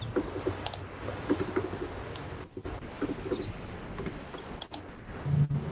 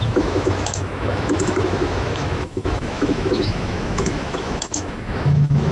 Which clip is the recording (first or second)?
first